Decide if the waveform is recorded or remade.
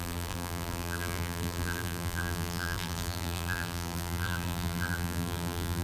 remade